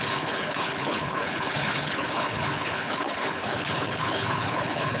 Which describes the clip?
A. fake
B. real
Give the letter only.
A